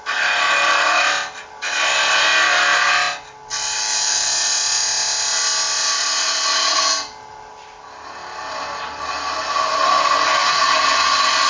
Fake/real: real